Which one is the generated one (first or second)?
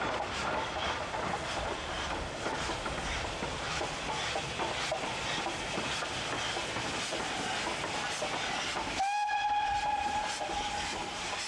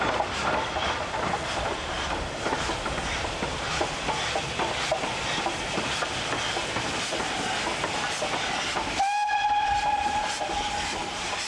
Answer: second